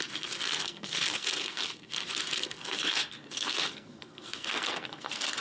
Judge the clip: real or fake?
fake